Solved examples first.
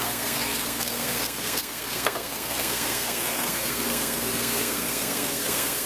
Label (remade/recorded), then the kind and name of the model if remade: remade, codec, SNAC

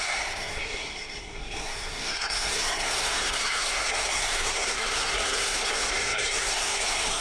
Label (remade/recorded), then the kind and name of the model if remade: remade, codec, SNAC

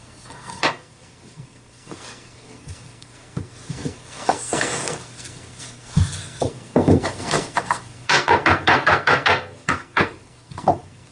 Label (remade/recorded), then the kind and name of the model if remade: remade, codec, SNAC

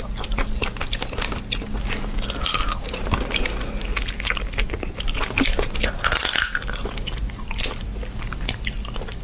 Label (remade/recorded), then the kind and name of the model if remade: recorded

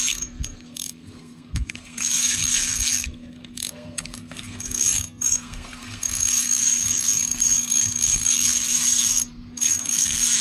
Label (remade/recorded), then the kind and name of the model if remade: remade, codec, SNAC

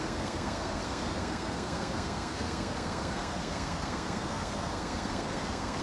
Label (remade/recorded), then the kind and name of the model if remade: remade, codec, SNAC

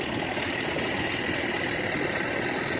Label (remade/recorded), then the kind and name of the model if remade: recorded